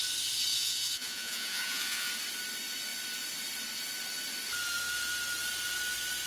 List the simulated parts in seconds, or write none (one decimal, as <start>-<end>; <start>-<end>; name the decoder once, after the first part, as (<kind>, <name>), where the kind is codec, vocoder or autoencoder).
0.5-2.1 (vocoder, Vocos)